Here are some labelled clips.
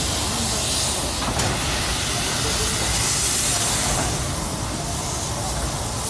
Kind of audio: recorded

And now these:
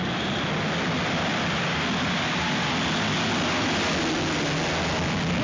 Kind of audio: recorded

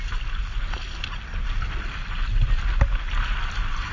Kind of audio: recorded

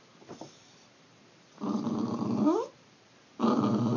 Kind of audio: recorded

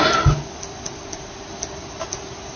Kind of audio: recorded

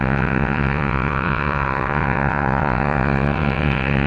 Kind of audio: remade